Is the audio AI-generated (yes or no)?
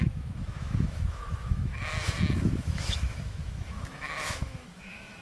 yes